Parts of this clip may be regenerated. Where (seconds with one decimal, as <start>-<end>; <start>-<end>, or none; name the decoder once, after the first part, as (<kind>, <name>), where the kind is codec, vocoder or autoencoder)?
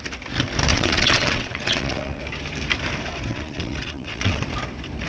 0.7-2.2 (vocoder, WaveNeXt); 3.3-4.4